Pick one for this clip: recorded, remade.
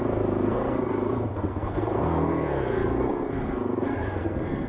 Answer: remade